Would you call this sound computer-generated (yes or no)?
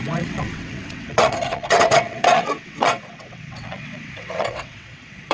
yes